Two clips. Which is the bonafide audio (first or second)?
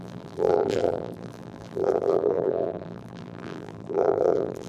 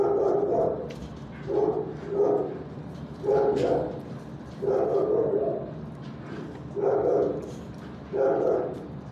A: second